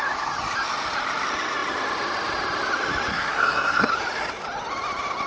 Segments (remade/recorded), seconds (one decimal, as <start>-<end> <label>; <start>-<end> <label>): 0.0-3.1 recorded; 3.1-3.9 remade; 3.9-5.3 recorded